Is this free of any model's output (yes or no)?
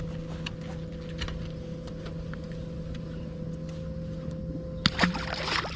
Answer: yes